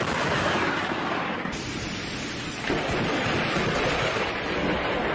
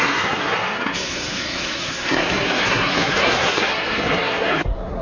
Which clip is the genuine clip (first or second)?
first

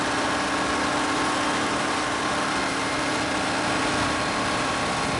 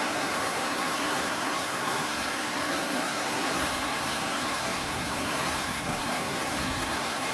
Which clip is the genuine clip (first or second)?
first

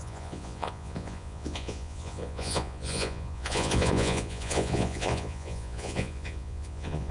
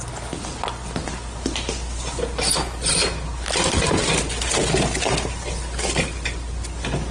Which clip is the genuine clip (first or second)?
second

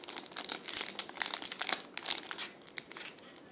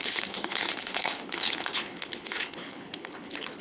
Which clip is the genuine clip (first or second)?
first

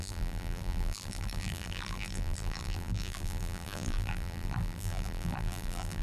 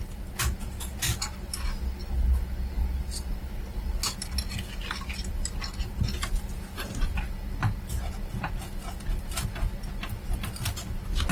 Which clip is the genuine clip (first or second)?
second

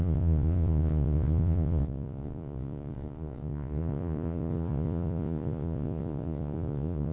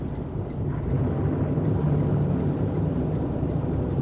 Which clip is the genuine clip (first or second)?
second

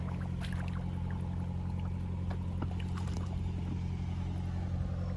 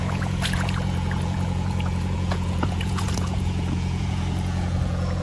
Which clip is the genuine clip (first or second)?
first